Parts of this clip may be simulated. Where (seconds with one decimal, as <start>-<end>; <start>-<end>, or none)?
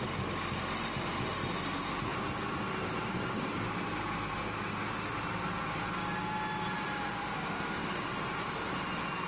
none